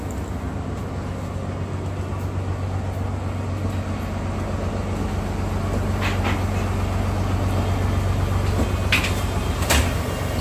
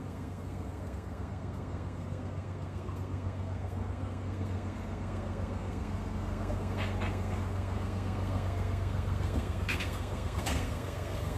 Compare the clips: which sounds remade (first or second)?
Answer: second